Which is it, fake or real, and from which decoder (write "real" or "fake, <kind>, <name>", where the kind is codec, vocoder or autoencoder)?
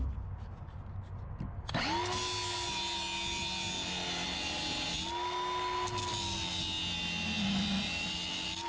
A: real